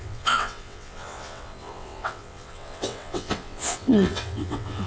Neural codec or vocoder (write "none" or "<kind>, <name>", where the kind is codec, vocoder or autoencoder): vocoder, WaveNeXt